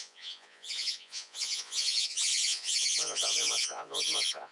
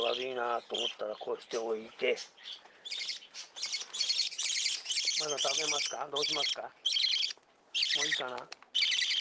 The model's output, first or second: first